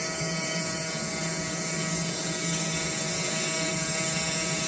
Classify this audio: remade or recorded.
remade